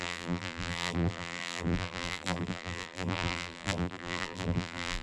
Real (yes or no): no